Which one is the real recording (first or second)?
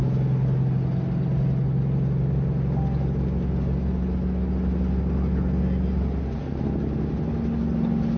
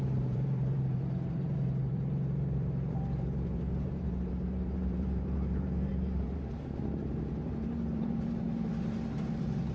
first